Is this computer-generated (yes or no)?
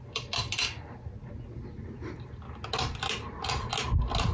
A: no